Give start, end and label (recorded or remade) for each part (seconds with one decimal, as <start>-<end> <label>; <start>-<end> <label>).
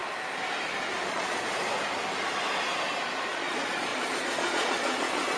0.0-1.1 recorded; 1.1-1.6 remade; 1.6-3.3 recorded; 3.3-5.4 remade